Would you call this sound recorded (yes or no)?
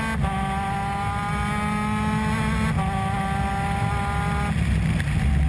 yes